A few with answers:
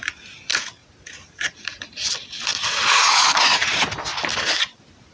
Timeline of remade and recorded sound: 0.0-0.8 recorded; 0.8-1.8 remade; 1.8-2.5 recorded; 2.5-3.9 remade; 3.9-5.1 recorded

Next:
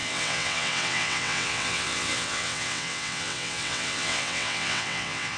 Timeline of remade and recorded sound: 0.0-5.4 remade

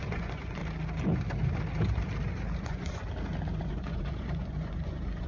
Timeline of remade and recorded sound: 0.0-0.6 remade; 0.6-2.6 recorded; 2.6-3.0 remade; 3.0-3.6 recorded; 3.6-5.3 remade

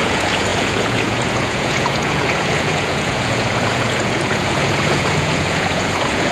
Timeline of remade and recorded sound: 0.0-6.3 remade

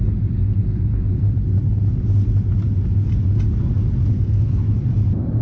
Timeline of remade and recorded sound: 0.0-4.1 recorded; 4.1-4.6 remade; 4.6-5.4 recorded

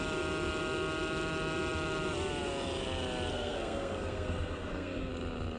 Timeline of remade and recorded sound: 0.0-3.3 recorded; 3.3-5.1 remade; 5.1-5.6 recorded